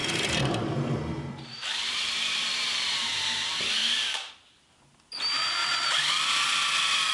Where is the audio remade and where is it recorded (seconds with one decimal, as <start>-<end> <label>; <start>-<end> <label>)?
0.0-4.3 remade; 4.3-5.6 recorded; 5.6-6.1 remade; 6.1-7.1 recorded